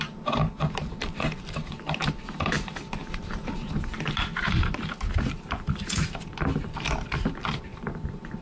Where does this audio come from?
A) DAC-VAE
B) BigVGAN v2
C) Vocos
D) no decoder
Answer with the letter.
B